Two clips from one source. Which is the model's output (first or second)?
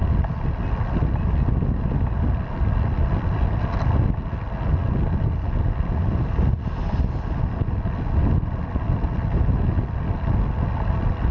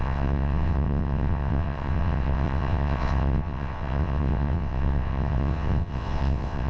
second